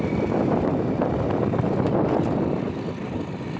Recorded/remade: recorded